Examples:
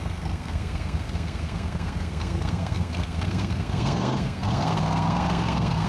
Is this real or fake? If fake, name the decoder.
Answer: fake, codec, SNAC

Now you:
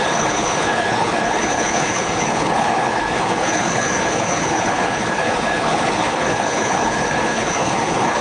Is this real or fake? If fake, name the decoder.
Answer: fake, codec, HILCodec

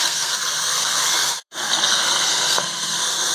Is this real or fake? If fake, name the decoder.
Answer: fake, codec, SNAC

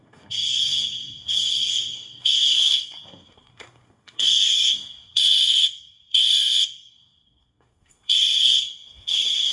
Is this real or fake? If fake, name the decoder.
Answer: fake, codec, SNAC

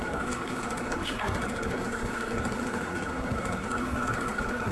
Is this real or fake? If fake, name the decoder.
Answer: fake, codec, SNAC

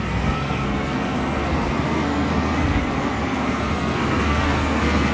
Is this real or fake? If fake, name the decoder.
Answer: fake, codec, SNAC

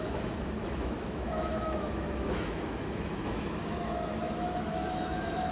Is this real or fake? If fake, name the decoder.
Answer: fake, autoencoder, DAC-VAE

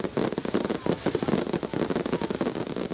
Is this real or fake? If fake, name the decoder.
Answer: real